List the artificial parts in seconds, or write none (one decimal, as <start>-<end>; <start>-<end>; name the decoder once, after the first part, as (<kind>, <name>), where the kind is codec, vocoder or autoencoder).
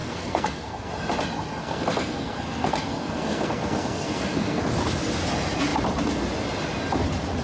0.0-0.9 (codec, SNAC); 1.6-4.6